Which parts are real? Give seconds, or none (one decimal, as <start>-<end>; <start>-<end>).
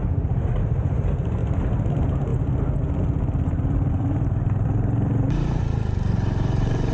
1.4-1.9; 2.3-3.9